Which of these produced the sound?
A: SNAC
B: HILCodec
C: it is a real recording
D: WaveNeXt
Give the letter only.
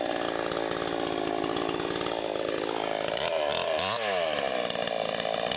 C